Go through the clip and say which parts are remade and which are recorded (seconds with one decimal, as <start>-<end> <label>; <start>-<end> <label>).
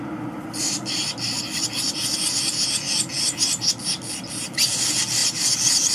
0.0-5.9 recorded